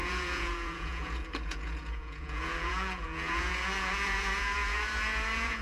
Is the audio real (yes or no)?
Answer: no